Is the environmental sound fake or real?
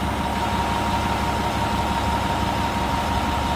real